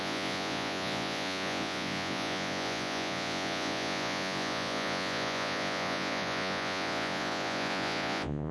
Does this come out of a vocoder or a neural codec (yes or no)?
yes